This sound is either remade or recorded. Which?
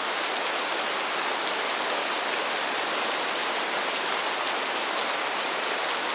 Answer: recorded